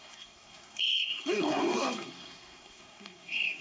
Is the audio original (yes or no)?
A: no